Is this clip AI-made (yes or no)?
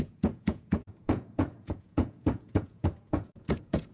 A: yes